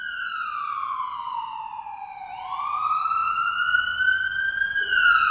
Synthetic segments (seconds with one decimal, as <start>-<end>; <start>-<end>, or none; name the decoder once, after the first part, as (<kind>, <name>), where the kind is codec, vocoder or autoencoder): 3.2-3.8 (vocoder, Vocos)